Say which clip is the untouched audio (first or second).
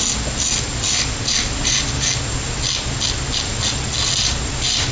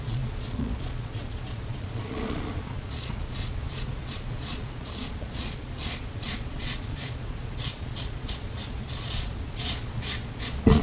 first